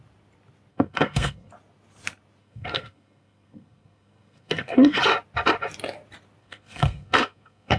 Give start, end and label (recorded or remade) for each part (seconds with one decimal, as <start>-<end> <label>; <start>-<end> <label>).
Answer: 0.0-0.7 recorded; 0.7-1.5 remade; 1.5-2.4 recorded; 2.4-5.0 remade; 5.0-6.4 recorded; 6.4-7.8 remade